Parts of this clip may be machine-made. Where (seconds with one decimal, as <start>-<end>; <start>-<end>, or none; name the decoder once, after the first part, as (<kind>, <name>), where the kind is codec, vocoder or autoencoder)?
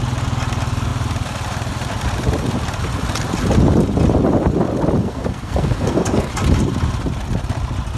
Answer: 5.0-6.3 (codec, SNAC)